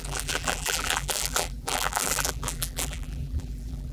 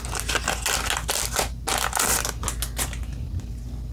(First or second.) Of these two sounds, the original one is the second